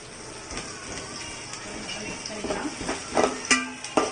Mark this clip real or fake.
real